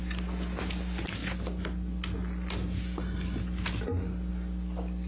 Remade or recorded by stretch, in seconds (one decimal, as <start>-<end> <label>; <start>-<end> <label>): 0.0-5.1 recorded